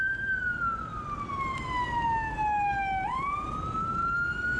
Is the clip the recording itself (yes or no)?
yes